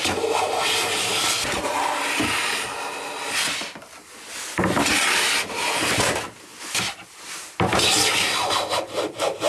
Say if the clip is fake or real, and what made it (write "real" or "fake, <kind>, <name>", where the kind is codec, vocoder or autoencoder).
real